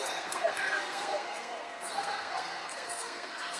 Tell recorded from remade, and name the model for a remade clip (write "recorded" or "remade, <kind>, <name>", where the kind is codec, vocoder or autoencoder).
remade, codec, SNAC